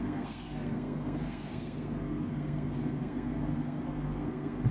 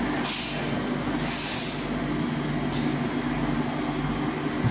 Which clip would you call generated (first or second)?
first